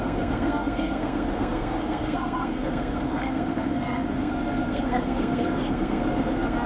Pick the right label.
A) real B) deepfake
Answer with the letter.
B